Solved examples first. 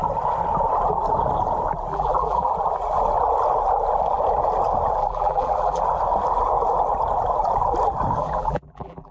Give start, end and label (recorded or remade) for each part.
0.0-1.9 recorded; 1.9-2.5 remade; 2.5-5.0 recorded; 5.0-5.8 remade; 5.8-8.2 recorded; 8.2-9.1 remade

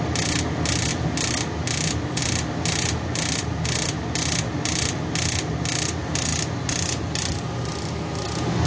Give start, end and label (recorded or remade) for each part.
0.0-8.7 recorded